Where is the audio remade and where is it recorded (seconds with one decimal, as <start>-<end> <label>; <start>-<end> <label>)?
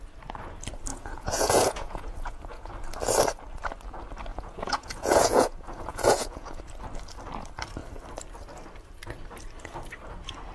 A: 0.0-0.9 recorded; 0.9-2.7 remade; 2.7-4.3 recorded; 4.3-6.6 remade; 6.6-10.5 recorded